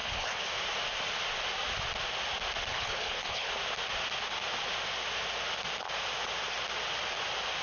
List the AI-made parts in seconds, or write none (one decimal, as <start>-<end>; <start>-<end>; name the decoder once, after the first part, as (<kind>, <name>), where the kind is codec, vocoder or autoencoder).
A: 0.0-0.5 (codec, HILCodec); 2.7-3.5